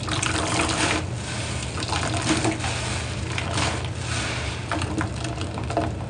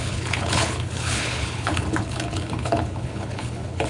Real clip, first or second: first